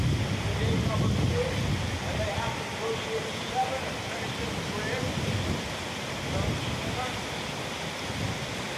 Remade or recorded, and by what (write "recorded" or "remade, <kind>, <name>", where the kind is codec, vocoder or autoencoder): recorded